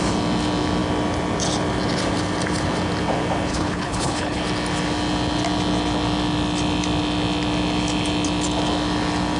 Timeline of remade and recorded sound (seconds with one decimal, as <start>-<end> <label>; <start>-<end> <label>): 0.0-3.5 recorded; 3.5-4.4 remade; 4.4-9.4 recorded